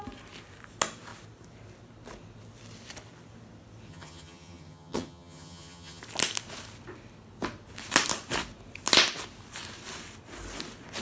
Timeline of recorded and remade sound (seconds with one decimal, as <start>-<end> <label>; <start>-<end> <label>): 0.0-3.9 recorded; 3.9-6.0 remade; 6.0-11.0 recorded